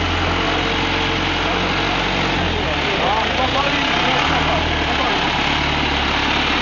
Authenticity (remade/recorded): recorded